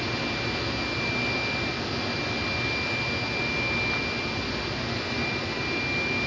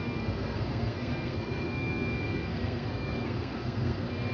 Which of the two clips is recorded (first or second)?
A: first